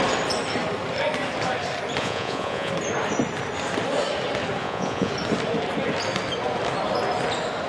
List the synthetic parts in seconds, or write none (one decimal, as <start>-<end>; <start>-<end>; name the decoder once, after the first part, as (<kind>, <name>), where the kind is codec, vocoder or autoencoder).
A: 2.0-2.7 (vocoder, Vocos); 4.6-5.1